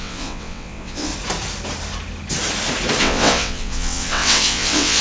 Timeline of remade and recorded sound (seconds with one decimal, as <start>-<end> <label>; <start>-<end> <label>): 0.0-1.1 remade; 1.1-3.0 recorded; 3.0-5.0 remade